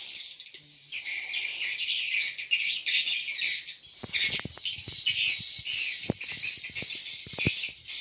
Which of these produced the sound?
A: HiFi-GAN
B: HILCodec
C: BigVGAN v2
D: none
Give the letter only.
D